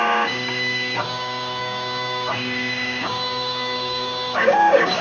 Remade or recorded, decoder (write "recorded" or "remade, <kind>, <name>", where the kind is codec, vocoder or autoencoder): remade, codec, DAC